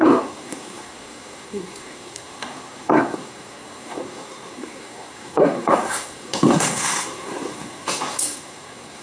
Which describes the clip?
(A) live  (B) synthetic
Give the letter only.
B